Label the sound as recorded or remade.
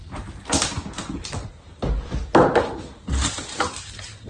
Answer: recorded